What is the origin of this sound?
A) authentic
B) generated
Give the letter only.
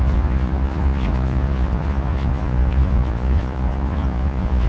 B